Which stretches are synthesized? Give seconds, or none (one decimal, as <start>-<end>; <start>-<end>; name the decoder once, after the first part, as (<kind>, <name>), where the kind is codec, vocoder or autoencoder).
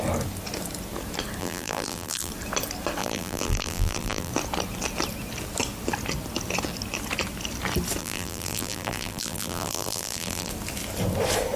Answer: 1.4-2.3 (vocoder, BigVGAN v2); 3.0-4.3; 8.0-10.5